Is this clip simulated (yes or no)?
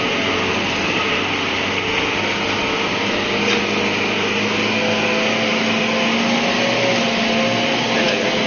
no